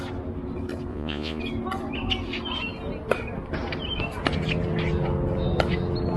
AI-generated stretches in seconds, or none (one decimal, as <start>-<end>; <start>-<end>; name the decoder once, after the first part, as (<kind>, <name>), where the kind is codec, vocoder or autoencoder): 0.9-1.4 (vocoder, Vocos)